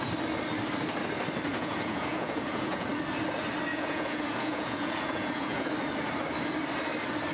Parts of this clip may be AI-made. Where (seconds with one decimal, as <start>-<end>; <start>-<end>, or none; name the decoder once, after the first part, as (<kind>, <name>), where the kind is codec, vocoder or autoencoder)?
1.5-2.9 (vocoder, Vocos); 3.7-5.7